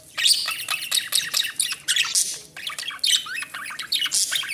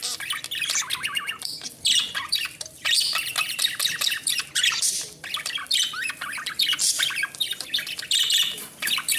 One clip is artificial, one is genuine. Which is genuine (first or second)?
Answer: first